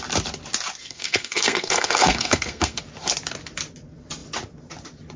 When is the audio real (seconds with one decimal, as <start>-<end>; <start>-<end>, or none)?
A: 0.0-0.8; 2.8-5.2